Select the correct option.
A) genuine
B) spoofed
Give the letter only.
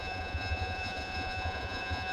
B